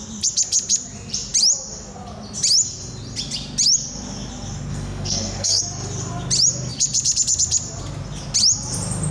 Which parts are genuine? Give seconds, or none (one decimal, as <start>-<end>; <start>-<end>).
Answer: 0.0-4.7; 5.6-9.1